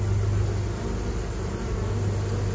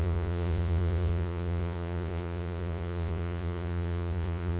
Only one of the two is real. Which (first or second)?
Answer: first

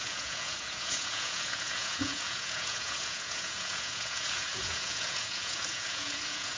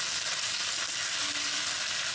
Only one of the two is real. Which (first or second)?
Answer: second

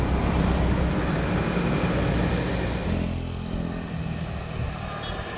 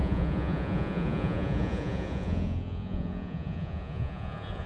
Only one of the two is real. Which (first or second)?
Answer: first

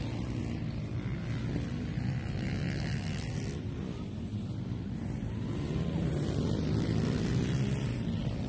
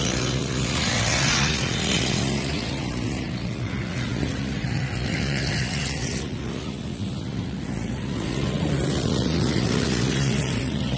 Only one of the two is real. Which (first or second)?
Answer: first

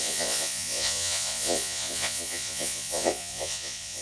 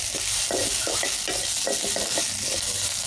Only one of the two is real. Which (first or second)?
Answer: second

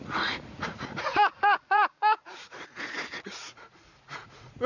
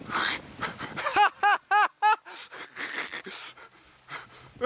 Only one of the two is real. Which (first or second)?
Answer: second